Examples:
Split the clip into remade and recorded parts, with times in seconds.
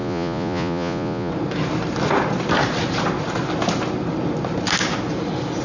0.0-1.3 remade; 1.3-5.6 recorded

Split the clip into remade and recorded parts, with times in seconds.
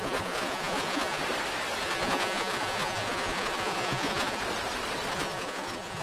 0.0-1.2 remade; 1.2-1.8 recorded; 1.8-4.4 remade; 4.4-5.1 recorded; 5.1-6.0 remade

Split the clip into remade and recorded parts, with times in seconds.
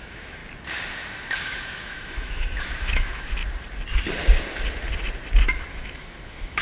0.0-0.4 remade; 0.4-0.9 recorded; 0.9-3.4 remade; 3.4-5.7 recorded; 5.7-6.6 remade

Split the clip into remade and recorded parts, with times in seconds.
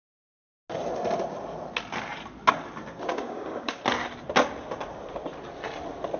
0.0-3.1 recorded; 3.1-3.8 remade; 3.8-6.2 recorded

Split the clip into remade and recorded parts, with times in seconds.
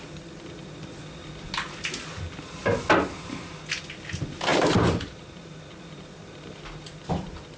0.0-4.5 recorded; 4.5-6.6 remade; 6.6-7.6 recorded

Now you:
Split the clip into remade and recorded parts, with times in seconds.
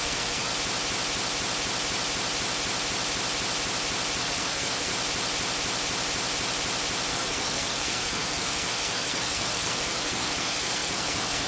0.0-0.5 remade; 0.5-4.2 recorded; 4.2-4.9 remade; 4.9-7.1 recorded; 7.1-11.5 remade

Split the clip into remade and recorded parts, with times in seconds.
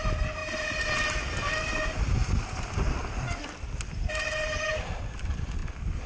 0.0-6.1 recorded